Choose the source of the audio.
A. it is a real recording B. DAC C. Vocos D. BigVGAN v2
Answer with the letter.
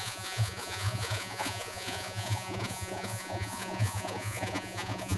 C